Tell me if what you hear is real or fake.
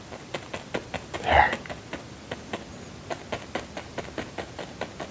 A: real